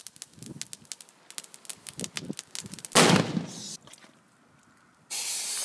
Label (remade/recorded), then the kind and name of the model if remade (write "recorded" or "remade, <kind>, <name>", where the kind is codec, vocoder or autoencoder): recorded